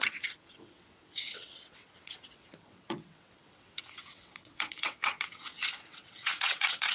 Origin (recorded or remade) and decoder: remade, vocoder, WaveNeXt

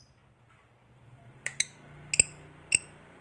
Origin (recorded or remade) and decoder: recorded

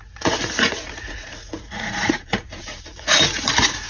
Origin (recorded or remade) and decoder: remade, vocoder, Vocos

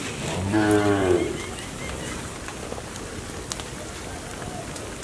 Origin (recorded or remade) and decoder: recorded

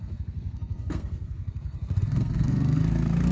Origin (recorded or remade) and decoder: remade, codec, SNAC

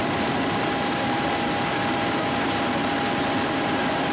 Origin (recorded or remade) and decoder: recorded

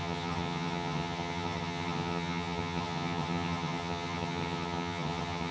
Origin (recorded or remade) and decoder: remade, vocoder, HiFi-GAN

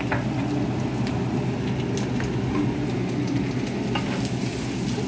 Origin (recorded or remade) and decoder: recorded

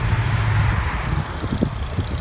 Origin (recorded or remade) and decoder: remade, vocoder, BigVGAN v2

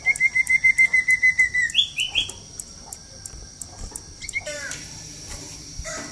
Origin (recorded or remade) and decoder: recorded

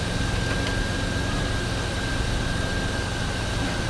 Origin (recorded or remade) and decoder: recorded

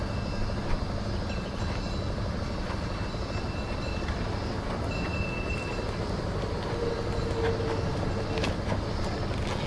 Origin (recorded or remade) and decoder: recorded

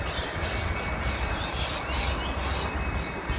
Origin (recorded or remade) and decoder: recorded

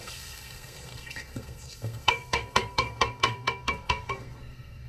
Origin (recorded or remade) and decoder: remade, codec, SNAC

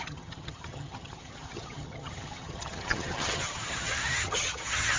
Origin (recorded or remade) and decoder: remade, vocoder, HiFi-GAN